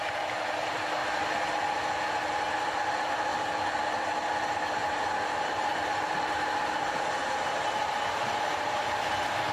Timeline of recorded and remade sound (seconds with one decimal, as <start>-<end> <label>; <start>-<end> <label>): 0.0-4.8 recorded; 4.8-9.5 remade